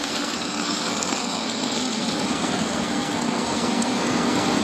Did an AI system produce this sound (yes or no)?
yes